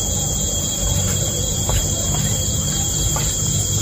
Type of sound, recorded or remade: remade